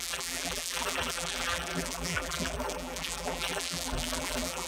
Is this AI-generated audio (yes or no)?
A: yes